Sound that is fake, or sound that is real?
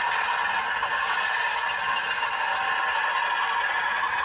real